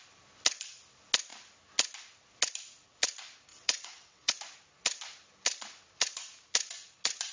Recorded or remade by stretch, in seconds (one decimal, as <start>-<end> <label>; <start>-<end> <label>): 0.0-3.5 recorded; 3.5-4.3 remade; 4.3-7.3 recorded